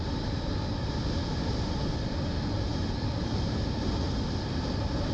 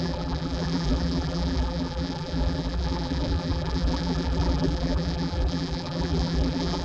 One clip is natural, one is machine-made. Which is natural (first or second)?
first